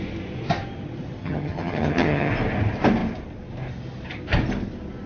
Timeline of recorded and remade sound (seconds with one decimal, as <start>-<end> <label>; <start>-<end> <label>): 0.0-1.2 recorded; 1.2-2.3 remade; 2.3-5.1 recorded